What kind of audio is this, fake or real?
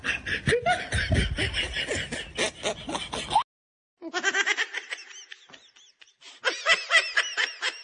real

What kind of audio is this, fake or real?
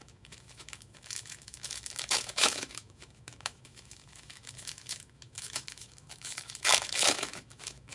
fake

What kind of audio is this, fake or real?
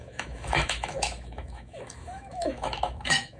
fake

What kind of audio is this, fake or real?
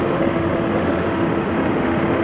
fake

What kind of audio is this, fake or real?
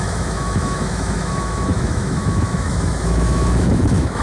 fake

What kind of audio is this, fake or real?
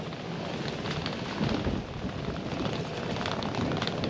real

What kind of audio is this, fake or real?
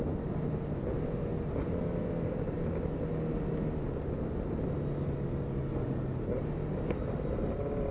real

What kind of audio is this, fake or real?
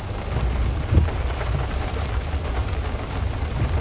real